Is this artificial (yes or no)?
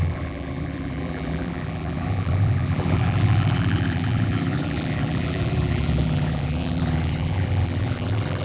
yes